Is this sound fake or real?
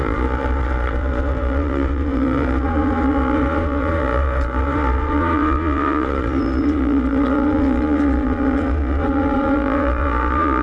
fake